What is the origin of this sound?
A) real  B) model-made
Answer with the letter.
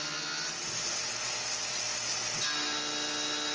A